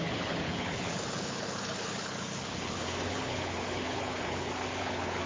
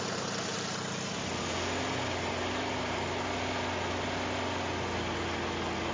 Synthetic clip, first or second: first